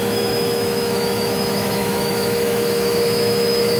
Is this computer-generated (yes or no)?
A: yes